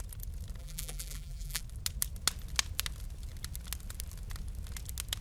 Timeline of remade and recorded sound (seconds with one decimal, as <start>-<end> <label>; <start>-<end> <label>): 0.0-0.6 recorded; 0.6-1.6 remade; 1.6-5.2 recorded